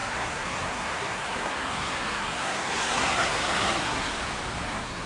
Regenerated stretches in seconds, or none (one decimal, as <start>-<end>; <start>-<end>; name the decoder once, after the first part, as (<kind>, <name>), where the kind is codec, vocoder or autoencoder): 0.0-4.1 (codec, SNAC); 4.6-5.1